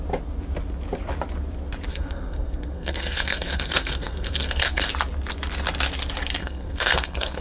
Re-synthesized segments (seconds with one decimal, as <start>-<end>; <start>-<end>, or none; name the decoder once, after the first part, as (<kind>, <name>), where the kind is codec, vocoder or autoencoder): 1.9-4.9 (codec, SNAC); 6.4-7.4